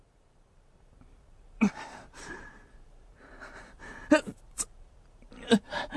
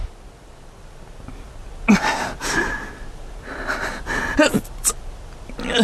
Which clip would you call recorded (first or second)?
second